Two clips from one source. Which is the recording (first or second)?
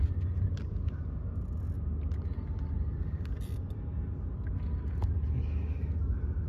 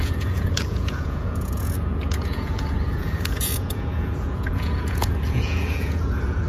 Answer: first